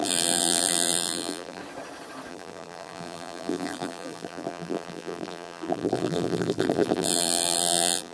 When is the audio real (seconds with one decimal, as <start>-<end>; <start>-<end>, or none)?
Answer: 1.6-2.3